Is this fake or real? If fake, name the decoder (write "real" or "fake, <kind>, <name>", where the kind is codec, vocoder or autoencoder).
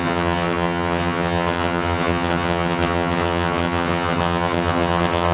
fake, vocoder, HiFi-GAN